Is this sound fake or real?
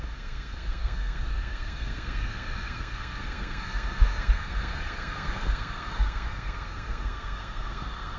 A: fake